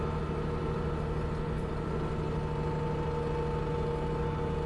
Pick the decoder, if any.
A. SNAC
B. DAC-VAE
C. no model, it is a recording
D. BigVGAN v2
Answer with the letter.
C